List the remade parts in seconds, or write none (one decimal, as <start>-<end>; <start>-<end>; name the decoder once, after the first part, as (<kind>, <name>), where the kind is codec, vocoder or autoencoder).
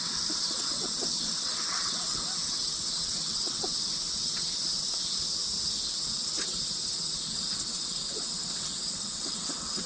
0.0-5.4 (vocoder, WaveNeXt); 5.9-9.9